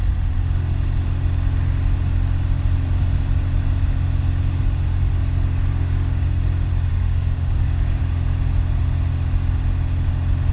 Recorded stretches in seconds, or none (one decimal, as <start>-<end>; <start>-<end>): 0.0-5.7; 6.4-6.9; 8.0-10.5

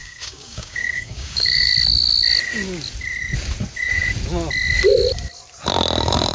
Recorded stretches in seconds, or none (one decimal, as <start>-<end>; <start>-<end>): 1.7-6.3